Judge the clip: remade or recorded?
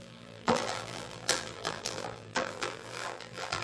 remade